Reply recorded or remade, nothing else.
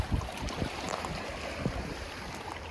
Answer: recorded